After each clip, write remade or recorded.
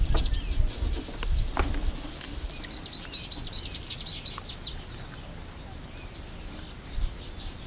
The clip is recorded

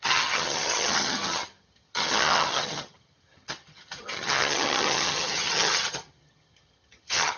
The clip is remade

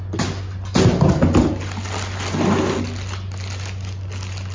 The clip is recorded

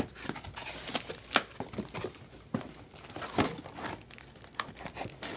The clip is recorded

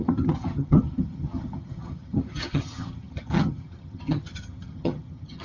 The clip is remade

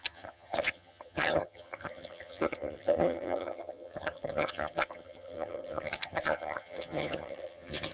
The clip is remade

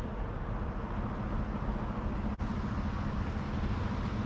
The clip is recorded